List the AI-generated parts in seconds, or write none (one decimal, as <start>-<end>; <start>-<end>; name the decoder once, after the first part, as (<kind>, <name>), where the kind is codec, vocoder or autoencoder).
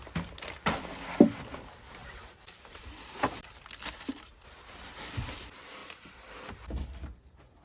2.0-2.8 (vocoder, BigVGAN v2); 5.8-6.3